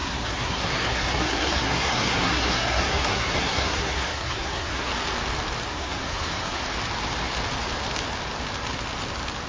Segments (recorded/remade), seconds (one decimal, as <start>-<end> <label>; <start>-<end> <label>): 0.0-4.9 remade; 4.9-5.7 recorded; 5.7-6.6 remade; 6.6-9.5 recorded